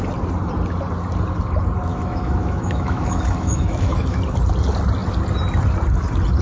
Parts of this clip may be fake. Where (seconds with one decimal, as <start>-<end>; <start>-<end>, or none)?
1.9-4.2